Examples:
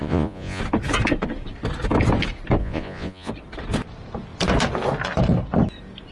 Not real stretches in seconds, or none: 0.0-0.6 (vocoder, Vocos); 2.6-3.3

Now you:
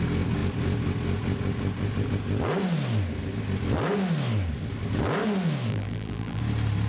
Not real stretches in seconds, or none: 5.7-6.4 (vocoder, BigVGAN v2)

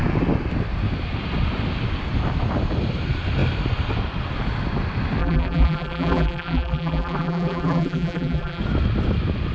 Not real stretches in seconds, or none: 5.2-8.6 (vocoder, BigVGAN v2)

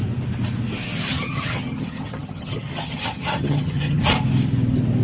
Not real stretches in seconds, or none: 1.1-4.0 (vocoder, HiFi-GAN)

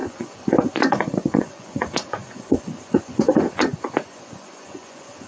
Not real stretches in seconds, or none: 0.0-5.3 (vocoder, Vocos)

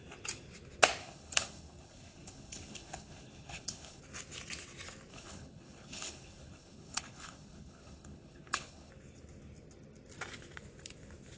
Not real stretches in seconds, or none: 1.0-4.0 (codec, HILCodec); 5.1-8.9

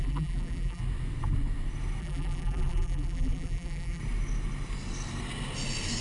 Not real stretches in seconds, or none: 0.0-0.8 (vocoder, BigVGAN v2); 2.0-4.0